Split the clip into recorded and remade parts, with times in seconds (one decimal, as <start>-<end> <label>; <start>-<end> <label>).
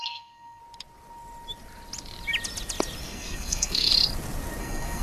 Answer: 0.0-0.6 remade; 0.6-3.0 recorded; 3.0-3.9 remade; 3.9-4.6 recorded; 4.6-5.0 remade